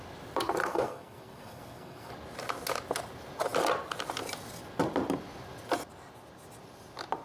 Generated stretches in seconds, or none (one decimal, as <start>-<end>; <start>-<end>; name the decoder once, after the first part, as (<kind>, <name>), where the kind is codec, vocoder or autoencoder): 0.6-2.1 (codec, SNAC)